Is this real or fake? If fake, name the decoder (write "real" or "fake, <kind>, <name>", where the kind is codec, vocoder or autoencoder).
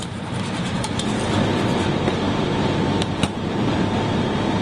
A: fake, vocoder, BigVGAN v2